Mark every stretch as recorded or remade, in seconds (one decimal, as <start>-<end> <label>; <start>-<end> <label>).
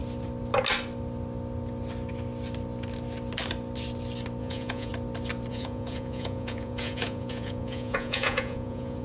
0.0-4.4 recorded; 4.4-4.9 remade; 4.9-5.5 recorded; 5.5-9.0 remade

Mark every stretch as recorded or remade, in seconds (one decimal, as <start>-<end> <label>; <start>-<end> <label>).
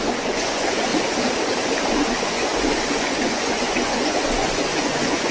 0.0-0.9 remade; 0.9-1.9 recorded; 1.9-5.3 remade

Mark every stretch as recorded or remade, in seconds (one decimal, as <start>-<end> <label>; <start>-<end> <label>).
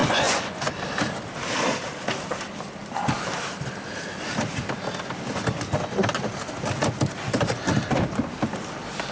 0.0-0.7 remade; 0.7-9.1 recorded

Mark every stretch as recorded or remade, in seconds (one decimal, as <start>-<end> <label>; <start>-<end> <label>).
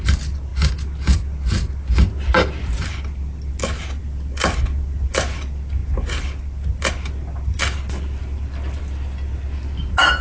0.0-10.2 recorded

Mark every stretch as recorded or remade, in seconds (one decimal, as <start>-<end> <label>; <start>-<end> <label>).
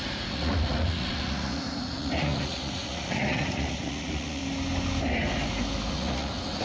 0.0-4.4 remade; 4.4-5.9 recorded; 5.9-6.6 remade